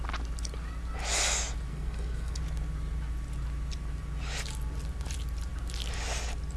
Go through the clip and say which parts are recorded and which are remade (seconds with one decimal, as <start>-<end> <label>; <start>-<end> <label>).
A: 0.0-1.7 recorded; 1.7-2.4 remade; 2.4-6.6 recorded